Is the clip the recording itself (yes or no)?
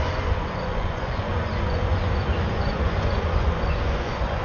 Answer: no